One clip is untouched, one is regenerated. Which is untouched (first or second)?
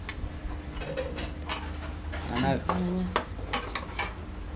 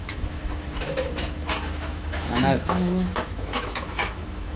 first